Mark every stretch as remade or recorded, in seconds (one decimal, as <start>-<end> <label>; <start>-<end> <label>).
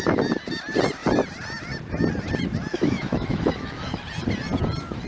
0.0-2.7 recorded; 2.7-4.0 remade; 4.0-5.1 recorded